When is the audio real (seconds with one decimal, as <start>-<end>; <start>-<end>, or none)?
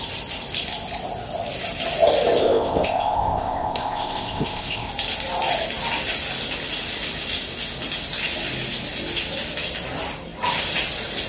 0.0-2.4; 4.9-11.3